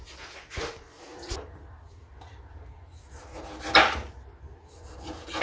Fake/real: real